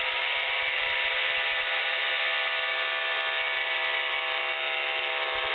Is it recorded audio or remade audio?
recorded